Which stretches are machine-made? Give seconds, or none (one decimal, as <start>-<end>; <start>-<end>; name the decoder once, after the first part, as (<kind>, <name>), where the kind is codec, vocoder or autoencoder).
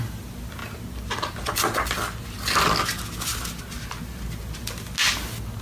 none